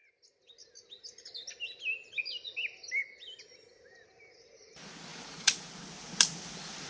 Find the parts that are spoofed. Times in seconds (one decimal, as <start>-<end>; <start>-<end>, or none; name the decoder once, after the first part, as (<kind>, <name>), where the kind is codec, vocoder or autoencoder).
5.1-5.7 (vocoder, Vocos)